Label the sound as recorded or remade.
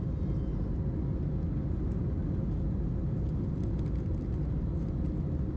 recorded